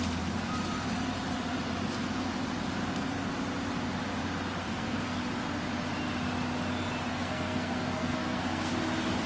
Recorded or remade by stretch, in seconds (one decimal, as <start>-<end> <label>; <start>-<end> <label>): 0.0-4.6 recorded; 4.6-5.2 remade; 5.2-7.1 recorded; 7.1-8.7 remade; 8.7-9.3 recorded